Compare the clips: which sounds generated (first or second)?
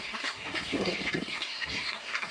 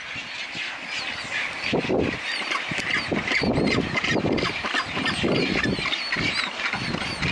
first